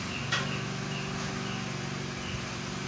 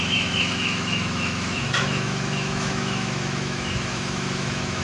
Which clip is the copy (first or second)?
second